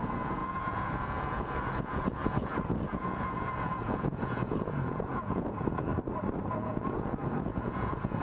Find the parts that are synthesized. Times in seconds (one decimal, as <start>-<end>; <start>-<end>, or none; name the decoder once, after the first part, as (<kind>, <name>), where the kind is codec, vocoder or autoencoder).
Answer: 0.0-5.9 (vocoder, Vocos); 6.5-8.2